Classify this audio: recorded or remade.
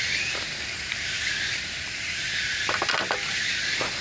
recorded